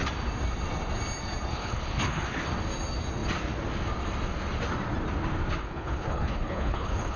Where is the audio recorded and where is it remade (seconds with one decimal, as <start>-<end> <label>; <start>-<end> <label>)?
0.0-1.5 recorded; 1.5-2.5 remade; 2.5-5.6 recorded; 5.6-7.2 remade